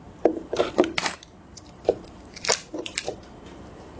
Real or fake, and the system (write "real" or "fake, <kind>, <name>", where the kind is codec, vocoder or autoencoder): fake, vocoder, BigVGAN v2